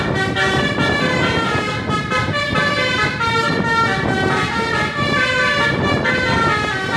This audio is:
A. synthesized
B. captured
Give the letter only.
B